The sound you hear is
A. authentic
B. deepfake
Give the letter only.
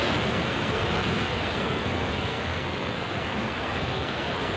B